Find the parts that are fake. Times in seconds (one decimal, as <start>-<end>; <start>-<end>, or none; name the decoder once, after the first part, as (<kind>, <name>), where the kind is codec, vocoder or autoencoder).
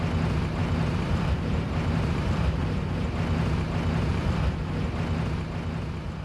0.6-3.0 (vocoder, BigVGAN v2); 4.1-4.6